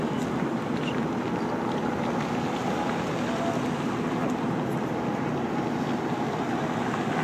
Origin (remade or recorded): recorded